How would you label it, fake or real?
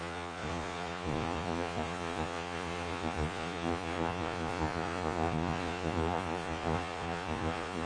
fake